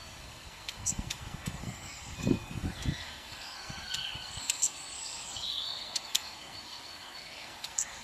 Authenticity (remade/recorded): remade